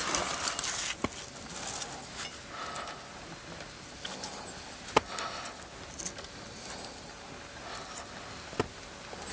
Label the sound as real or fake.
real